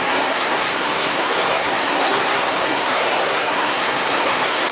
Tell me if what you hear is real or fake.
fake